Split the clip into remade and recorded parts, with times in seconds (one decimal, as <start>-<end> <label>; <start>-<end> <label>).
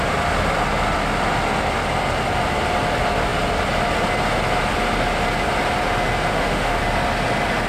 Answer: 0.0-6.3 recorded; 6.3-6.8 remade; 6.8-7.7 recorded